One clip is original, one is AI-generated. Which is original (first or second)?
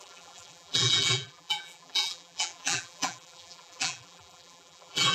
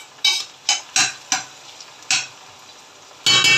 second